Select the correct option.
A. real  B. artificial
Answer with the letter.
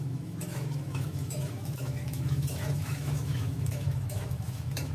B